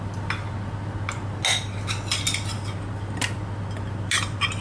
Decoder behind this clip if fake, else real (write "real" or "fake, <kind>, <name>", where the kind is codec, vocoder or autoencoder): real